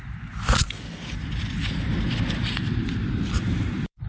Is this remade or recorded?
remade